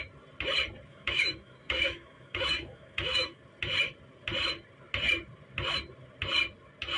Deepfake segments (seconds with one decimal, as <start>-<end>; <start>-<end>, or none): 0.9-3.4

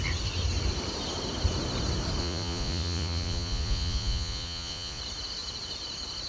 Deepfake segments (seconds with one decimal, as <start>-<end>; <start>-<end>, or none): 2.2-5.0

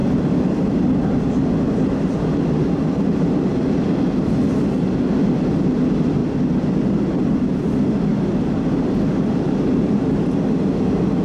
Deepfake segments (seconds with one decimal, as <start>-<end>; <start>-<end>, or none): 6.2-6.9

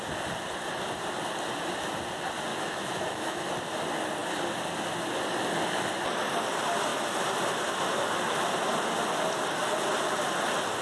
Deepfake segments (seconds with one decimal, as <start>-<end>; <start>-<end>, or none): 2.5-3.5

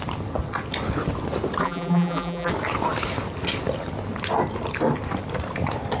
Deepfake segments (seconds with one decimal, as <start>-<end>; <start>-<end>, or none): 1.6-2.5

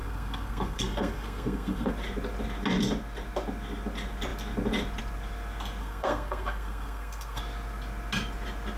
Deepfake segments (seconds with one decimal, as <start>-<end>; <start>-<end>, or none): 0.0-1.9; 5.8-7.4

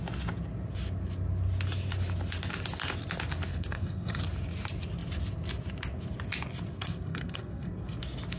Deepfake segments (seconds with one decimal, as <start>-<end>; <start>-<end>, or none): 3.5-4.2; 6.7-8.0